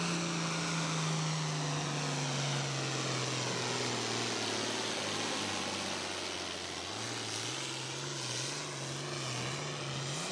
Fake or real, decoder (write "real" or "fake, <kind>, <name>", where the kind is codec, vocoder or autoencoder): real